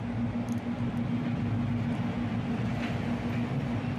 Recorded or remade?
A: recorded